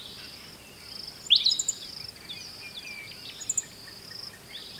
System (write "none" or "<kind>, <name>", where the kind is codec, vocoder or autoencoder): none